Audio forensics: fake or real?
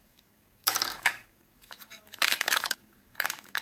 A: fake